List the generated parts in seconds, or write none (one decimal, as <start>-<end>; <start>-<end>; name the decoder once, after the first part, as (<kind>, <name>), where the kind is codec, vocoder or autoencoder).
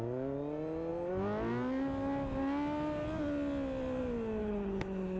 4.4-5.2 (codec, HILCodec)